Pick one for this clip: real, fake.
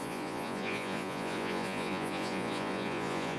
fake